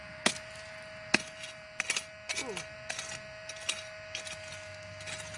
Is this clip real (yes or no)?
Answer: yes